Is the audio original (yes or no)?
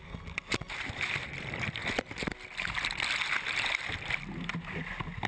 yes